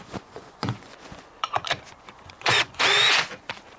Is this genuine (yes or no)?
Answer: no